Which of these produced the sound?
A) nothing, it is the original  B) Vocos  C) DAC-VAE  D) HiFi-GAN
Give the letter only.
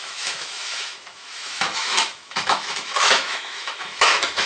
C